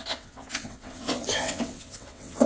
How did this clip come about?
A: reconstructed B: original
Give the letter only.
A